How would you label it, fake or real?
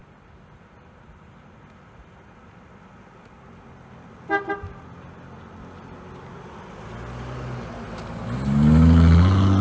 real